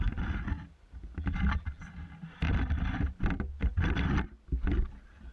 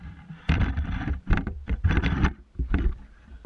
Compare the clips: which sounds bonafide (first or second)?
first